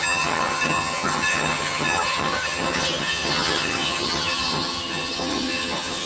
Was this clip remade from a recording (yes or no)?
yes